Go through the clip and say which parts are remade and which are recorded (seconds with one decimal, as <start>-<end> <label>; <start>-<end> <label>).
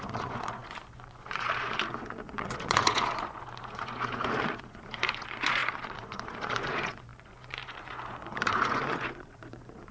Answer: 0.0-9.9 remade